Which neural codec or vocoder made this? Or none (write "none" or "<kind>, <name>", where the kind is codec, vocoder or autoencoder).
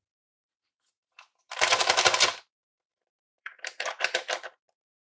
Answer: vocoder, BigVGAN v2